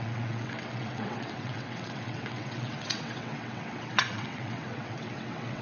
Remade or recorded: remade